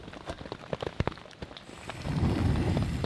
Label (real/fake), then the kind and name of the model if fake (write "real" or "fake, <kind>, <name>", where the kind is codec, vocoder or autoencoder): real